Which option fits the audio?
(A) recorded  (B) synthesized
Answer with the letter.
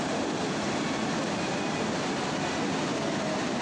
A